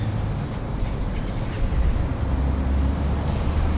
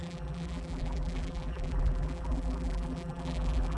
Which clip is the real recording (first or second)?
first